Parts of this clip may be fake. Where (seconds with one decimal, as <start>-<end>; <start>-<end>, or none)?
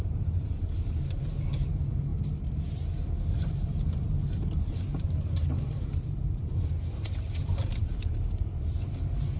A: 0.0-2.1; 2.7-9.4